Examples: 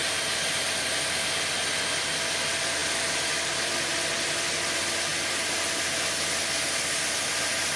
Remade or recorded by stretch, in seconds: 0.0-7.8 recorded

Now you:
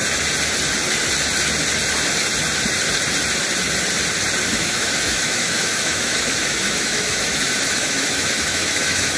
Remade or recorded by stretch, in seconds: 0.0-4.5 recorded; 4.5-9.2 remade

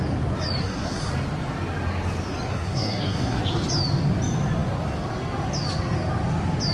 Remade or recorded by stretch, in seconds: 0.0-0.6 recorded; 0.6-1.1 remade; 1.1-2.5 recorded; 2.5-3.4 remade; 3.4-6.7 recorded

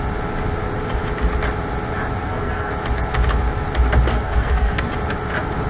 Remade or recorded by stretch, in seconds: 0.0-2.2 recorded; 2.2-2.7 remade; 2.7-4.1 recorded; 4.1-4.9 remade; 4.9-5.7 recorded

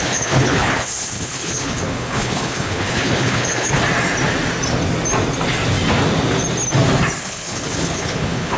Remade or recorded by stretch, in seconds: 0.0-3.8 remade; 3.8-7.2 recorded; 7.2-8.6 remade